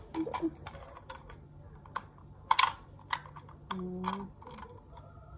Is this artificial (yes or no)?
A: no